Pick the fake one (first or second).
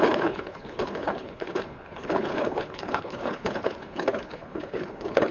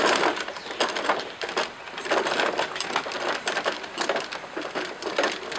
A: first